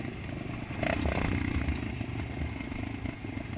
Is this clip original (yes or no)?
yes